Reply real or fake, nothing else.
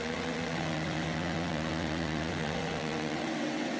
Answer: fake